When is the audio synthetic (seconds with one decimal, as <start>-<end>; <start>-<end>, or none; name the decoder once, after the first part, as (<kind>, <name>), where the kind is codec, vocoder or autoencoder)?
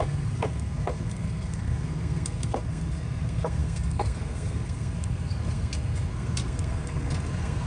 0.0-7.7 (codec, SNAC)